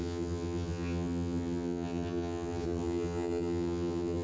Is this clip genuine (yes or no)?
no